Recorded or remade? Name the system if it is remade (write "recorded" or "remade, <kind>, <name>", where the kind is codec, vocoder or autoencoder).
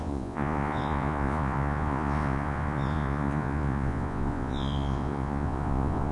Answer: remade, vocoder, Vocos